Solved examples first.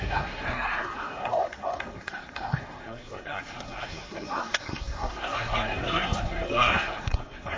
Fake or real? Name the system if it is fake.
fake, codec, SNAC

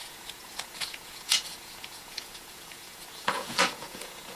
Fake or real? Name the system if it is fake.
fake, vocoder, Vocos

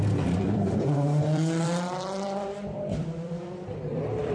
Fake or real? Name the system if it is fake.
fake, vocoder, BigVGAN v2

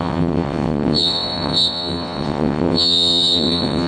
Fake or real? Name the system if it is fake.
fake, vocoder, WaveNeXt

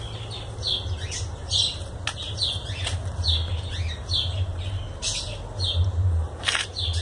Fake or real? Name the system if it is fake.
real